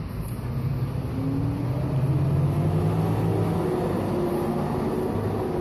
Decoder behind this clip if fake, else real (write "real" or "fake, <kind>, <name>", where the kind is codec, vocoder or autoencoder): real